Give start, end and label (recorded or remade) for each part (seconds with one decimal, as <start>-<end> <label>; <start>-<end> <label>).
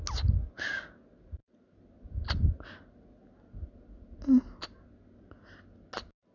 0.0-6.3 recorded